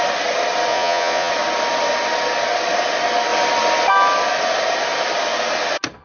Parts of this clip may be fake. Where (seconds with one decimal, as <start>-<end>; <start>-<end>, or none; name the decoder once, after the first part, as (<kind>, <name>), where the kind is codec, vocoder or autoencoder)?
0.7-1.3 (vocoder, Vocos)